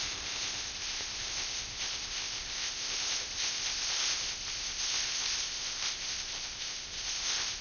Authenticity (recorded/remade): remade